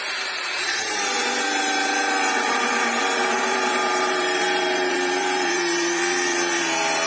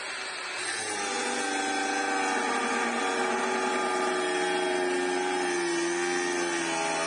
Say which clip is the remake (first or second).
first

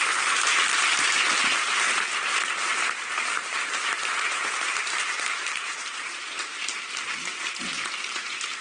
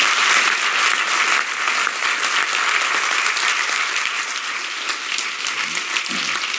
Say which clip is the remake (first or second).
first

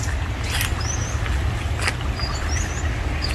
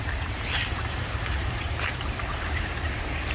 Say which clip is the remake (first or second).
second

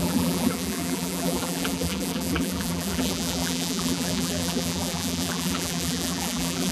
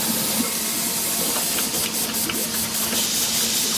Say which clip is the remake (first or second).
first